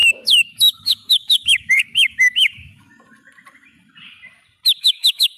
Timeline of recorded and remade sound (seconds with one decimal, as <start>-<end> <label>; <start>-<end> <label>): 0.0-2.9 remade; 2.9-4.8 recorded; 4.8-5.4 remade